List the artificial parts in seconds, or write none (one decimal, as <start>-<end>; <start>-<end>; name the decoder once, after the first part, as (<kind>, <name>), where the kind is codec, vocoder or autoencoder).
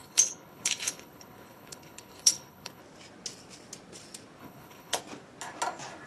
0.0-2.8 (codec, HILCodec); 4.4-5.0